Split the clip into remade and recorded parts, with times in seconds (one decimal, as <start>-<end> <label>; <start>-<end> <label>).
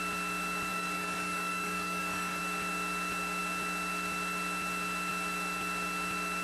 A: 0.0-0.7 recorded; 0.7-2.4 remade; 2.4-6.4 recorded